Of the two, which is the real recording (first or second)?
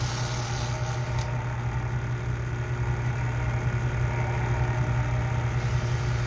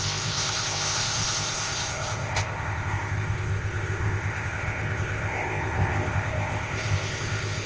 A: first